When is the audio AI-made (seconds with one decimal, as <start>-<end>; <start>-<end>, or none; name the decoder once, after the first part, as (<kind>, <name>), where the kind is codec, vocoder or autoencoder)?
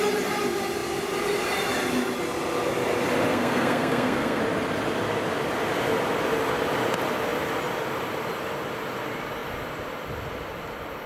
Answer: 3.3-4.4 (codec, SNAC)